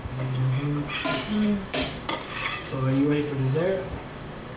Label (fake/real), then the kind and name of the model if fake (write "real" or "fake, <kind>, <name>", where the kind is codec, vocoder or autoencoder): fake, codec, DAC